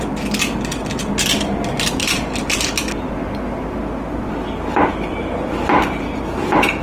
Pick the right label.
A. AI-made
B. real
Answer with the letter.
B